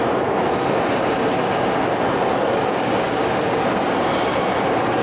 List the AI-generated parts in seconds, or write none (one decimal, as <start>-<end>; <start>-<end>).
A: 2.7-3.2